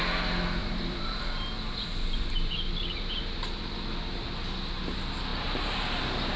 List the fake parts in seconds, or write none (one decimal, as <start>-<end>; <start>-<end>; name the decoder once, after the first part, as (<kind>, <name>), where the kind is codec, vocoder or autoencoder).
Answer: 0.6-1.2 (vocoder, BigVGAN v2); 5.3-6.0